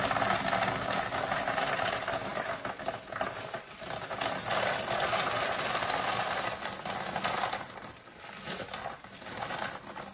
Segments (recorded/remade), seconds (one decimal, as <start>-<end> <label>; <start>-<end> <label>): 0.0-10.1 recorded